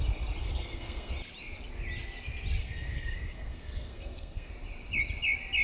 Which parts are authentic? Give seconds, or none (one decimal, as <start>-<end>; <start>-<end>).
0.0-0.4; 1.1-2.6; 4.5-5.6